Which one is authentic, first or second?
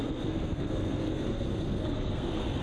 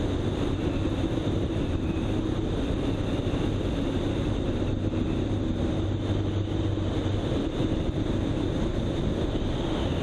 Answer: second